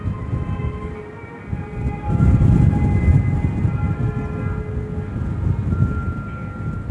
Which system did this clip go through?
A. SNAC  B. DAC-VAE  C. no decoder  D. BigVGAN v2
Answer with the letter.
C